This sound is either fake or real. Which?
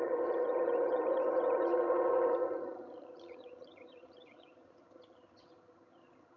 fake